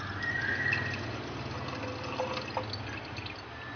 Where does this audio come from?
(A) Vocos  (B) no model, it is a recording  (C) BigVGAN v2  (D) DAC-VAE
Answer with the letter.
B